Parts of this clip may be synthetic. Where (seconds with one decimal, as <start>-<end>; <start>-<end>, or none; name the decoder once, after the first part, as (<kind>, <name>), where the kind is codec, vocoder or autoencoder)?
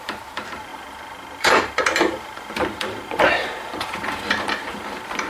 0.0-0.7 (vocoder, BigVGAN v2); 1.4-5.3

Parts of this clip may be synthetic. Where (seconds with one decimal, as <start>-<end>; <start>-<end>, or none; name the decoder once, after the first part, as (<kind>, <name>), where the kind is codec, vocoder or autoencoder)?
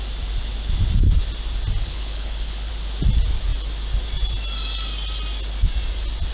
1.8-2.7 (codec, HILCodec)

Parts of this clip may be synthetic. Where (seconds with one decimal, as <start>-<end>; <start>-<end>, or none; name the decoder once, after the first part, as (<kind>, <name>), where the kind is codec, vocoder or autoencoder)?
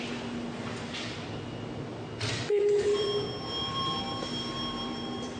2.9-5.4 (vocoder, BigVGAN v2)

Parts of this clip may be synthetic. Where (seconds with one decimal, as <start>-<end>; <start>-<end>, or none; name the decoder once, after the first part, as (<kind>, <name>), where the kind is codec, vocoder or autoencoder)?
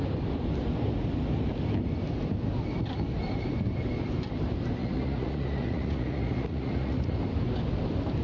4.8-7.2 (vocoder, Vocos)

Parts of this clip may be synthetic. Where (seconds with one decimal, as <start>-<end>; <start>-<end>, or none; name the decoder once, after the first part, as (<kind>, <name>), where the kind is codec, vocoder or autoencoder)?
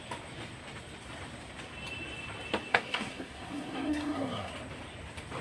2.7-4.5 (codec, SNAC)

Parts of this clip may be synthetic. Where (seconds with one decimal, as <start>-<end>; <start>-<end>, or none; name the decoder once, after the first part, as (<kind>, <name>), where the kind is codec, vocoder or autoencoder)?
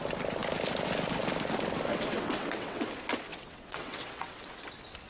1.9-2.8 (vocoder, WaveNeXt); 3.3-4.5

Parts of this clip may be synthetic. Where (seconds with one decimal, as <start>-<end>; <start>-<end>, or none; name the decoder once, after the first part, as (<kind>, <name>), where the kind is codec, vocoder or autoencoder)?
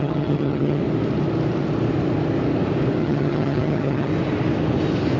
0.0-0.8 (vocoder, HiFi-GAN); 3.0-4.1